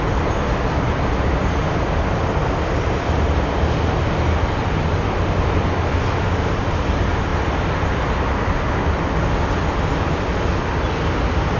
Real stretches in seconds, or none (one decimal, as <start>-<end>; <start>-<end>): 0.0-11.6

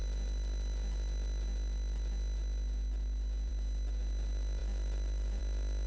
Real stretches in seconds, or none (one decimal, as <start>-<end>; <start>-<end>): 0.0-5.9

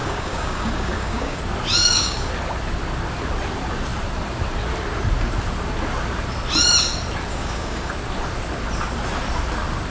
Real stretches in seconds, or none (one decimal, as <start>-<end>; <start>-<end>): 1.4-1.8; 2.3-7.3; 7.9-9.9

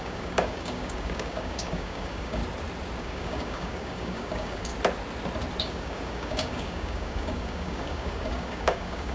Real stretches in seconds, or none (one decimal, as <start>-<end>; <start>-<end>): 2.4-3.0; 4.7-5.6